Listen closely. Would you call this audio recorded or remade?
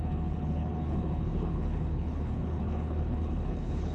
remade